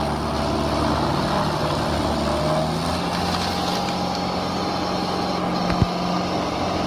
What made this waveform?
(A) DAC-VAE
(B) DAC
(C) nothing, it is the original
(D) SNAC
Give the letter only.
C